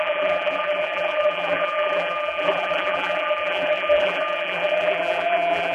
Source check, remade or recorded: remade